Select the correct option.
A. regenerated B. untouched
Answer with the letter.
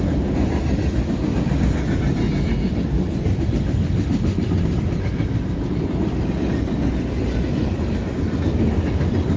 B